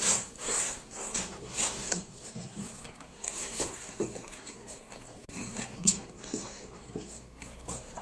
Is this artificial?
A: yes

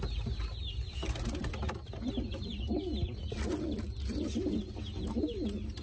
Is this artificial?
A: no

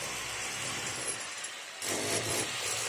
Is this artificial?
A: yes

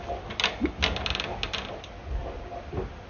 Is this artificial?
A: no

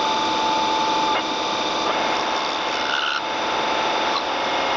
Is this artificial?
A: no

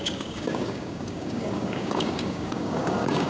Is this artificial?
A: yes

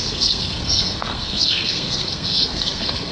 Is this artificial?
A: yes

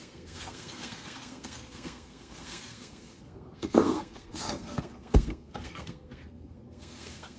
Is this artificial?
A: yes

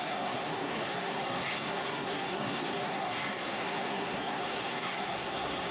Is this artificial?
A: yes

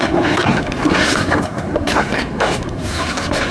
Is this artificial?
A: yes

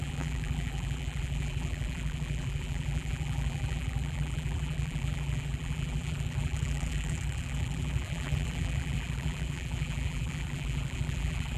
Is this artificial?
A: yes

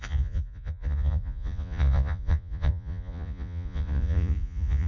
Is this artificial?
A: yes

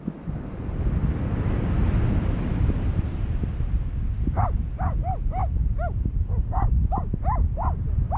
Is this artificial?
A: no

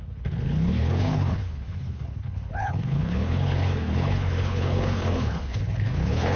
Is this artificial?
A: yes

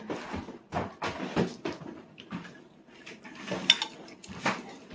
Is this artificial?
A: no